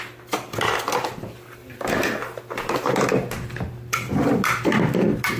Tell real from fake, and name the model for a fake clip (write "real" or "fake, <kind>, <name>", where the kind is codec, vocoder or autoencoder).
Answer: real